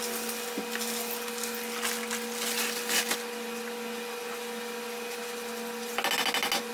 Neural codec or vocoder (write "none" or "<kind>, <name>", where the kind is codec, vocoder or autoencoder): none